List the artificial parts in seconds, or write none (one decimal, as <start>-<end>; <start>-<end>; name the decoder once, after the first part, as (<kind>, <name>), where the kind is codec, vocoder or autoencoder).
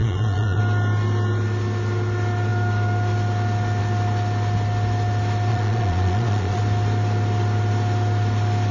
0.0-0.6 (vocoder, Vocos); 5.5-6.6